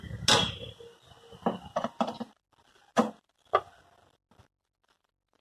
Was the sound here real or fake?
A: real